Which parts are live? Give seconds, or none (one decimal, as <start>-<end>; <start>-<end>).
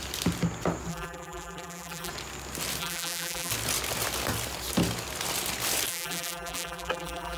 0.0-0.9; 2.1-2.8; 3.5-5.9